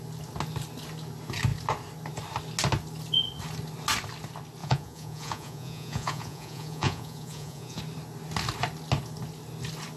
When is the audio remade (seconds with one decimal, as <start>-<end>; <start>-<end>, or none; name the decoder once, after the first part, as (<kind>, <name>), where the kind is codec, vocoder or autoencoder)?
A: 4.6-7.8 (vocoder, Vocos)